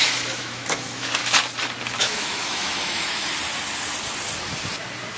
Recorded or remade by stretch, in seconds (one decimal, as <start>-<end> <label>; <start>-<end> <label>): 0.0-1.2 remade; 1.2-2.0 recorded; 2.0-3.2 remade; 3.2-5.2 recorded